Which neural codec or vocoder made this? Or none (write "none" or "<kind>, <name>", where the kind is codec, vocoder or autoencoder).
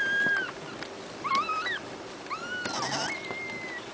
none